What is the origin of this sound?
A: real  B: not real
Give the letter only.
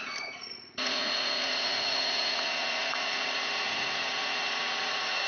B